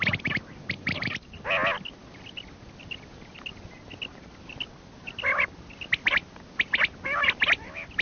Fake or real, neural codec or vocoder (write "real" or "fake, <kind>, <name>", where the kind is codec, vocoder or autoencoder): real